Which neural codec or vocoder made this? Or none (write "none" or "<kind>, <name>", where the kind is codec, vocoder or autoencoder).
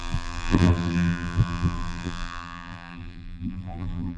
vocoder, BigVGAN v2